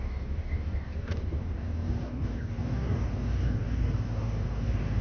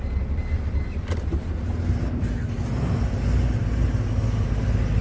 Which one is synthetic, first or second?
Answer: first